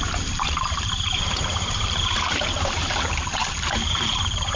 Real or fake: fake